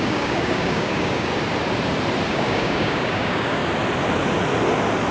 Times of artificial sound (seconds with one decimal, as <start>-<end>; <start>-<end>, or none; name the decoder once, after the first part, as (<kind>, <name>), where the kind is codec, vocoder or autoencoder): 0.0-1.3 (codec, DAC); 2.3-3.6